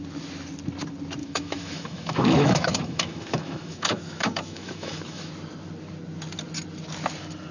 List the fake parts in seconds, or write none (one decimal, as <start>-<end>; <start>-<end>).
1.2-5.3